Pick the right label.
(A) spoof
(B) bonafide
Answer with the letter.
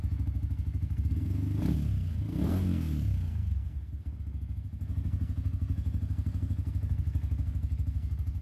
A